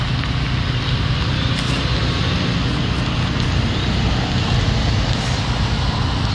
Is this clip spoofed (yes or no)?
no